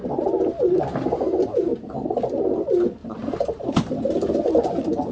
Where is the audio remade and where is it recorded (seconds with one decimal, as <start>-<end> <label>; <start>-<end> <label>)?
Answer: 0.0-3.0 recorded; 3.0-3.6 remade; 3.6-5.1 recorded